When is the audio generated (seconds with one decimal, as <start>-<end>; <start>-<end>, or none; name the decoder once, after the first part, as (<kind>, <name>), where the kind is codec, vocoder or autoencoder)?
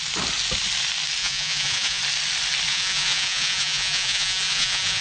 1.2-2.0 (vocoder, Vocos); 2.7-5.0